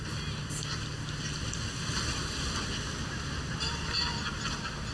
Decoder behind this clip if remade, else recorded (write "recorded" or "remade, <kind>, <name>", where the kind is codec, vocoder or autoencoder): recorded